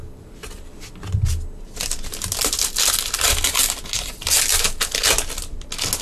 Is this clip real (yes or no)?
yes